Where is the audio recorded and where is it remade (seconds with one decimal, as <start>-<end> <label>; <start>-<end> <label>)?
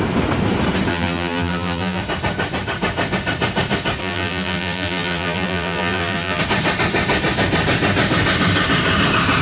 0.0-0.9 recorded; 0.9-2.0 remade; 2.0-4.0 recorded; 4.0-6.4 remade; 6.4-9.4 recorded